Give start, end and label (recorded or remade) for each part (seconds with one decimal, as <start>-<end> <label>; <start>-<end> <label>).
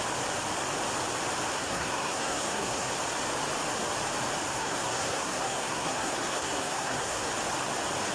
0.0-1.5 recorded; 1.5-2.9 remade; 2.9-4.5 recorded; 4.5-7.3 remade; 7.3-8.1 recorded